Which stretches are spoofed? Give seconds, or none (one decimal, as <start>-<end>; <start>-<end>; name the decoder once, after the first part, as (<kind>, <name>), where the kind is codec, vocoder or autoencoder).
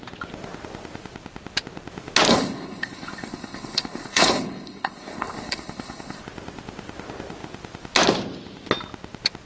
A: 2.3-6.2 (codec, HILCodec)